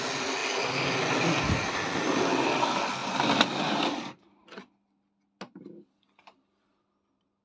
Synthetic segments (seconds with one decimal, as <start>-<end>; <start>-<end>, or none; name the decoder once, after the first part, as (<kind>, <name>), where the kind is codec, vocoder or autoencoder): none